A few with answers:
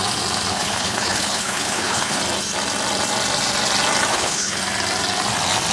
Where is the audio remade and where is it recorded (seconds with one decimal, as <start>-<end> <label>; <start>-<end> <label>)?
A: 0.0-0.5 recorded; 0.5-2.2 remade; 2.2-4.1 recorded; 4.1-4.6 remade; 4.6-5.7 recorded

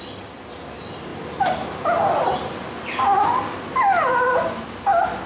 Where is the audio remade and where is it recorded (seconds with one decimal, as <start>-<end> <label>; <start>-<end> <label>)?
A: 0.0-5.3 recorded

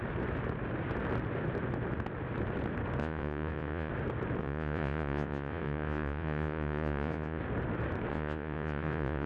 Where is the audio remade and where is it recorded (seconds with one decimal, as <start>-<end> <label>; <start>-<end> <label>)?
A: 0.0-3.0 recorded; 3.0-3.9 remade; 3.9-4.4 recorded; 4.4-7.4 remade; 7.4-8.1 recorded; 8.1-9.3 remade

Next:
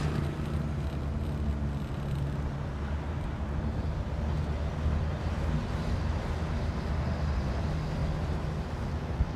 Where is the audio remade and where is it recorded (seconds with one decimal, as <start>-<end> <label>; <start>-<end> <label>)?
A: 0.0-9.4 recorded